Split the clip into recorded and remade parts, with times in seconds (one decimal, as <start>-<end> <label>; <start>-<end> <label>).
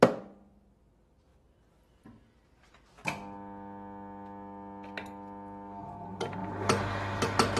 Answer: 0.0-7.6 recorded